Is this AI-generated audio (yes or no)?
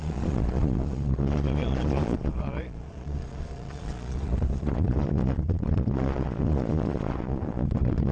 yes